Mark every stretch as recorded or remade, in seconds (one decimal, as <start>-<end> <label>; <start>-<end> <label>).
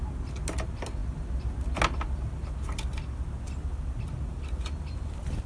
0.0-5.5 recorded